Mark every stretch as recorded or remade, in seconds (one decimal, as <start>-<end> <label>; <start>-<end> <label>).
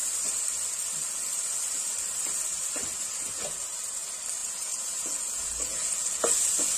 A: 0.0-4.4 recorded; 4.4-6.1 remade; 6.1-6.8 recorded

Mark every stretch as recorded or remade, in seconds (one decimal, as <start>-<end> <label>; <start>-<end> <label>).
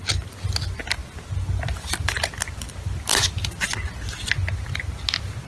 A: 0.0-5.5 recorded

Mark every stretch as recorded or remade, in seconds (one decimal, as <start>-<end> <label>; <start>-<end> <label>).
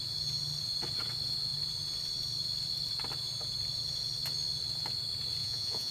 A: 0.0-5.4 recorded; 5.4-5.9 remade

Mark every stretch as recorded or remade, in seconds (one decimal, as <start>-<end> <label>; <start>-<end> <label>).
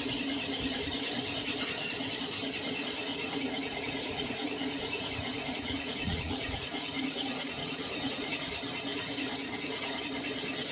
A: 0.0-3.1 recorded; 3.1-8.3 remade; 8.3-8.9 recorded; 8.9-10.0 remade; 10.0-10.7 recorded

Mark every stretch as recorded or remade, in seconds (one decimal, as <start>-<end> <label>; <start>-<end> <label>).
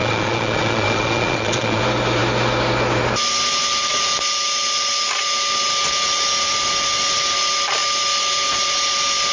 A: 0.0-1.8 remade; 1.8-9.3 recorded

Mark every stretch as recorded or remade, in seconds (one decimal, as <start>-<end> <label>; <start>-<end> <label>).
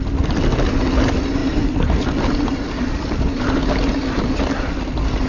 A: 0.0-5.3 recorded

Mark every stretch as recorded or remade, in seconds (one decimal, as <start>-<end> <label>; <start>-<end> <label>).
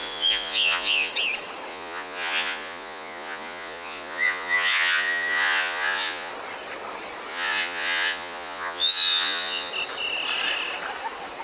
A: 0.0-1.1 remade; 1.1-1.7 recorded; 1.7-6.3 remade; 6.3-7.3 recorded; 7.3-9.7 remade; 9.7-11.4 recorded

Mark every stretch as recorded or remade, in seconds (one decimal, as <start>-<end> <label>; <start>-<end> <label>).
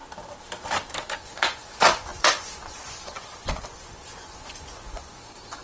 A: 0.0-1.2 recorded; 1.2-5.6 remade